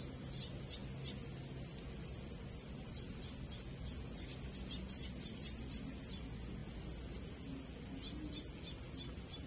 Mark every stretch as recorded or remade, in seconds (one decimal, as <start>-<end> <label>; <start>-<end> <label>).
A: 0.0-9.5 recorded